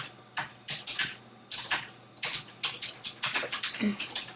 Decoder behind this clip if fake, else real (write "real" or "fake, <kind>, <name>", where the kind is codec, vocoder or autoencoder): real